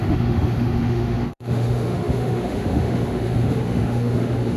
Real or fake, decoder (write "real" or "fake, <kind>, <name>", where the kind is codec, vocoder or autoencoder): fake, autoencoder, DAC-VAE